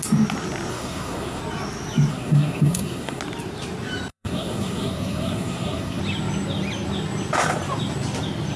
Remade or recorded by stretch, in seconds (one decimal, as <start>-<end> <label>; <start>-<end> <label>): 0.0-0.7 recorded; 0.7-1.4 remade; 1.4-2.1 recorded; 2.1-3.2 remade; 3.2-4.1 recorded; 4.1-6.0 remade; 6.0-8.6 recorded